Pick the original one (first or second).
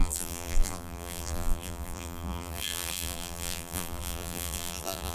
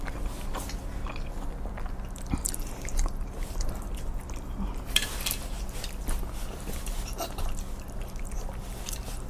second